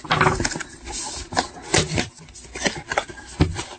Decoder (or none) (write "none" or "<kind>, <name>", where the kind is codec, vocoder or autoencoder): none